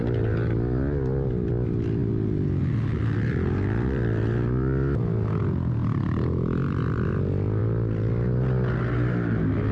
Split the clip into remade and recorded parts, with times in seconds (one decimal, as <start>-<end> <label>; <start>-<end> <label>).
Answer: 0.0-9.7 recorded